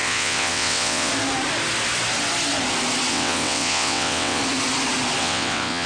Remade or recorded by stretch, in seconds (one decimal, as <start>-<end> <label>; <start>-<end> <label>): 0.0-1.1 remade; 1.1-3.1 recorded; 3.1-4.4 remade; 4.4-5.2 recorded; 5.2-5.9 remade